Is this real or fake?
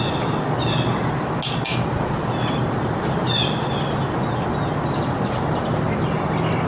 real